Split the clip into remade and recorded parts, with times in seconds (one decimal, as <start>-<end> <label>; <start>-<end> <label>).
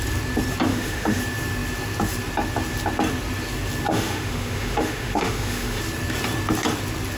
0.0-0.7 recorded; 0.7-1.2 remade; 1.2-3.9 recorded; 3.9-5.8 remade; 5.8-7.2 recorded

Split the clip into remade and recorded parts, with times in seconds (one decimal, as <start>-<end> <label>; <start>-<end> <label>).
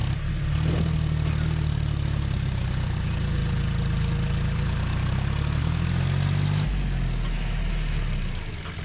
0.0-8.8 recorded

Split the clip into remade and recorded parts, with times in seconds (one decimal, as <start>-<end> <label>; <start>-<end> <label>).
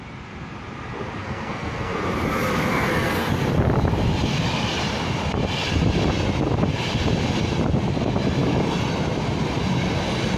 0.0-1.2 recorded; 1.2-2.0 remade; 2.0-2.7 recorded; 2.7-3.3 remade; 3.3-10.4 recorded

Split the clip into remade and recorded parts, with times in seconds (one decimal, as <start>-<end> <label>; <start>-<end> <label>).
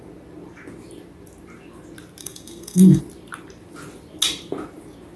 0.0-2.2 recorded; 2.2-3.0 remade; 3.0-5.2 recorded